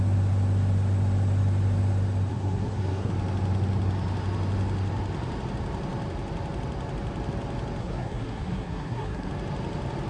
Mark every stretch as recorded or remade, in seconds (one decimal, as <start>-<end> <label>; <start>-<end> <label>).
0.0-2.3 recorded; 2.3-3.1 remade; 3.1-7.8 recorded; 7.8-9.3 remade; 9.3-10.1 recorded

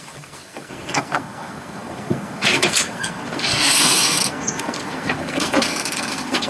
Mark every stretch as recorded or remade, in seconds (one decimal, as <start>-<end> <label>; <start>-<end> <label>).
0.0-6.5 remade

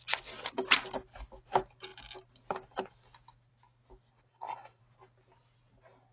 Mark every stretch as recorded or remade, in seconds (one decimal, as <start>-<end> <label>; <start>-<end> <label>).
0.0-4.3 recorded; 4.3-4.8 remade; 4.8-6.1 recorded

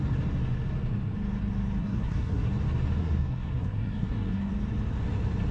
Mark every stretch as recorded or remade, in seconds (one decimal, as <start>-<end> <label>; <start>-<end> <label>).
0.0-1.8 recorded; 1.8-2.5 remade; 2.5-3.0 recorded; 3.0-4.5 remade; 4.5-5.5 recorded

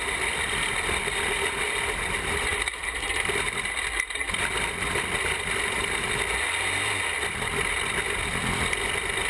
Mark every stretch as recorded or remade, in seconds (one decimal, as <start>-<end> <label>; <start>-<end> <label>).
0.0-9.3 recorded

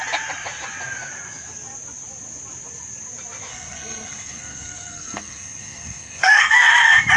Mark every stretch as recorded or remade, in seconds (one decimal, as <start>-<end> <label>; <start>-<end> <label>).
0.0-3.5 recorded; 3.5-6.7 remade; 6.7-7.2 recorded

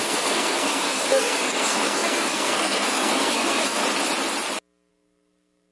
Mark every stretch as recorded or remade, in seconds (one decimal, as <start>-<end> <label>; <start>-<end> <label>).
0.0-3.8 remade; 3.8-4.9 recorded; 4.9-5.7 remade

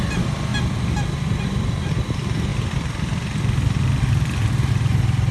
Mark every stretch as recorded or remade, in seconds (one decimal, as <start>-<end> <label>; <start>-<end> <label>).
0.0-5.3 recorded